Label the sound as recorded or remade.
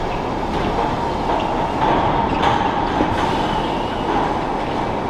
recorded